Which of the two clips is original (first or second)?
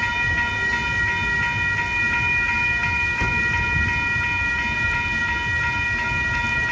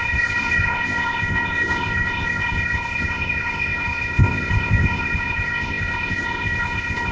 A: first